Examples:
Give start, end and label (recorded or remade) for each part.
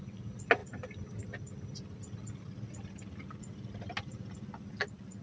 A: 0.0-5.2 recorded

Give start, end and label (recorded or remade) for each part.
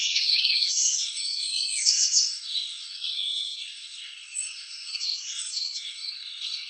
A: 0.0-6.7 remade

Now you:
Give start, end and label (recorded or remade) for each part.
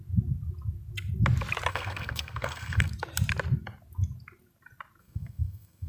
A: 0.0-1.7 recorded; 1.7-2.9 remade; 2.9-5.0 recorded; 5.0-5.9 remade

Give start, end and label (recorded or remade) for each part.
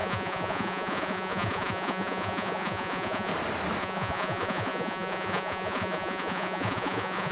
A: 0.0-3.3 remade; 3.3-3.8 recorded; 3.8-7.3 remade